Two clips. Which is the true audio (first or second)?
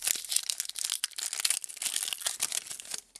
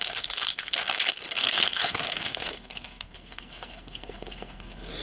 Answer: first